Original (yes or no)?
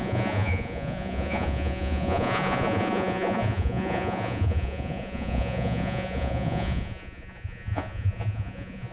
no